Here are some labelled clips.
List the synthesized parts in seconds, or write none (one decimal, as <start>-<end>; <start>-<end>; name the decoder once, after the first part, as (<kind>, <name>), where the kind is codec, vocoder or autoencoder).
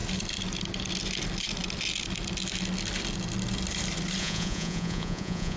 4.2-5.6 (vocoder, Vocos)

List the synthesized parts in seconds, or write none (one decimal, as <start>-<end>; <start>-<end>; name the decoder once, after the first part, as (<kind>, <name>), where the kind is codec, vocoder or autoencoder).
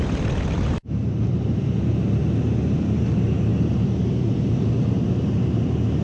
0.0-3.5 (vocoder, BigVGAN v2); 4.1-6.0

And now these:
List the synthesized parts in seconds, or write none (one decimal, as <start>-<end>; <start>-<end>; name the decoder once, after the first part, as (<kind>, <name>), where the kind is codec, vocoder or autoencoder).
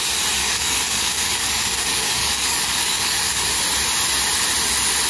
0.4-3.5 (codec, DAC)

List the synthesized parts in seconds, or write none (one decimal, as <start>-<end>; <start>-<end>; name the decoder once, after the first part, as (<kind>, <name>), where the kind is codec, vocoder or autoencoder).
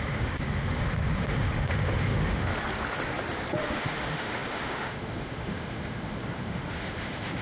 0.0-2.5 (autoencoder, DAC-VAE); 3.6-7.4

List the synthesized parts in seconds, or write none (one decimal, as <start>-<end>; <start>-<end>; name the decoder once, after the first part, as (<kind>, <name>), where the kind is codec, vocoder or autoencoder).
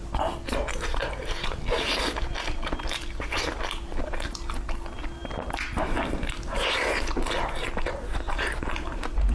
0.9-2.0 (vocoder, BigVGAN v2)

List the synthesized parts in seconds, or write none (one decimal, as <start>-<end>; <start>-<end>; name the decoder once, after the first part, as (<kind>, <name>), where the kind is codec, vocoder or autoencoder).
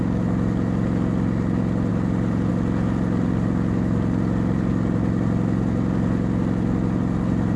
none